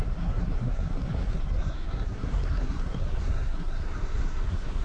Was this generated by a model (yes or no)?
yes